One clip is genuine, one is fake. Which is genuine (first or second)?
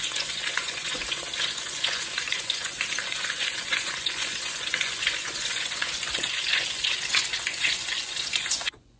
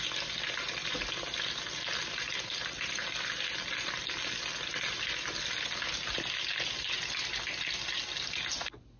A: second